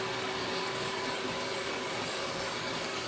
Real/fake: fake